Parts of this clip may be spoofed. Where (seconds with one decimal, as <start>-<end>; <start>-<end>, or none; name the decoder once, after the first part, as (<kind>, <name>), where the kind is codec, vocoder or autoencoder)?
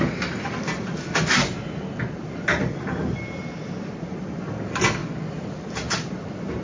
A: none